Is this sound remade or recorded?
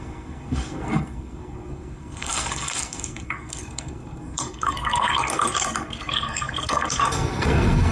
remade